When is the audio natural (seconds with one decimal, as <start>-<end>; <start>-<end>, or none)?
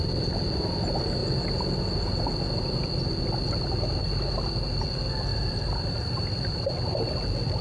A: 0.0-5.3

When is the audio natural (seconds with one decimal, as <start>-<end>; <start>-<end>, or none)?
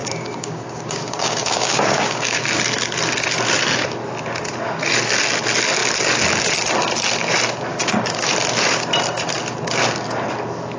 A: 2.4-7.7; 8.3-10.8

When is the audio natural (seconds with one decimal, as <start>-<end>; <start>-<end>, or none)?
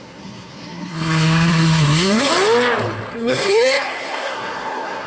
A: 2.3-3.1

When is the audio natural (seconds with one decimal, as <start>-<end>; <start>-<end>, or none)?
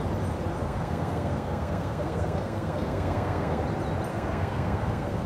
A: 0.0-0.6; 3.6-4.1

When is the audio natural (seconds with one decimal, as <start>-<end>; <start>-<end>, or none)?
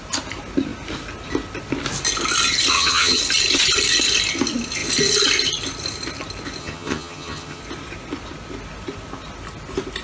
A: 0.0-2.7; 3.2-6.6; 7.6-10.0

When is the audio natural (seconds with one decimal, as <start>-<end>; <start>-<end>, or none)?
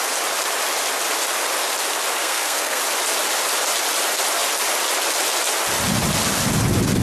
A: 0.0-2.2; 2.8-7.0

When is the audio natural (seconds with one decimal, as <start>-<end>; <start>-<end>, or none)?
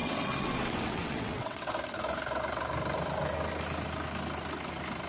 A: 1.7-5.1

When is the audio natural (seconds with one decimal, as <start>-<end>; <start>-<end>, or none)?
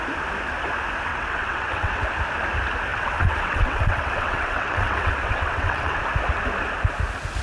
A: 0.0-1.1; 2.0-2.9; 6.0-7.4